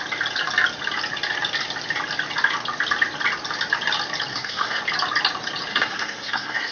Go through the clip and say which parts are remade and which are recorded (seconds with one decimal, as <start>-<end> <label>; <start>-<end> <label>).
0.0-4.3 recorded; 4.3-4.8 remade; 4.8-5.7 recorded; 5.7-6.7 remade

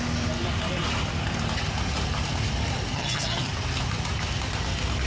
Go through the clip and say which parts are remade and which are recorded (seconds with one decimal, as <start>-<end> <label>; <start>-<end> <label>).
0.0-2.9 recorded; 2.9-3.5 remade; 3.5-5.1 recorded

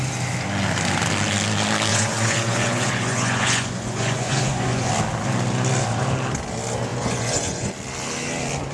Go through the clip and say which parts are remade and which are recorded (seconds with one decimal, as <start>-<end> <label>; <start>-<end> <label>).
0.0-1.9 recorded; 1.9-4.9 remade; 4.9-6.9 recorded; 6.9-7.7 remade; 7.7-8.7 recorded

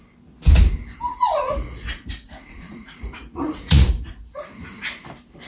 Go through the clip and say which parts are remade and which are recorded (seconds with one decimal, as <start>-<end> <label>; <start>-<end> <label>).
0.0-1.1 recorded; 1.1-4.4 remade; 4.4-5.5 recorded

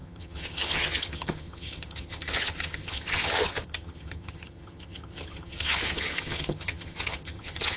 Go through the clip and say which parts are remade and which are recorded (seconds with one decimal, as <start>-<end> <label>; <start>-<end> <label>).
0.0-7.8 remade

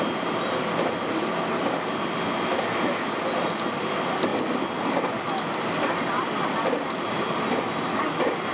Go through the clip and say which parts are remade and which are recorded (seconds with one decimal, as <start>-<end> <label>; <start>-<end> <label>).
0.0-8.5 recorded

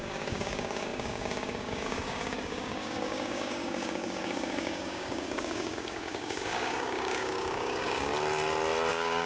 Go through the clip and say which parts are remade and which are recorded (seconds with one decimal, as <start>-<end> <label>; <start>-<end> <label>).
0.0-8.1 remade; 8.1-8.9 recorded; 8.9-9.3 remade

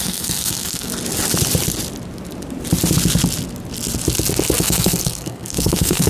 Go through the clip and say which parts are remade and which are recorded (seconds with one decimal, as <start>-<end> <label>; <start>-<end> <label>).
0.0-0.9 remade; 0.9-4.6 recorded; 4.6-6.1 remade